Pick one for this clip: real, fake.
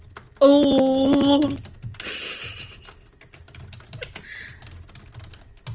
real